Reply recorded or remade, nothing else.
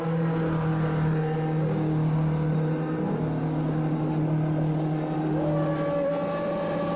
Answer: recorded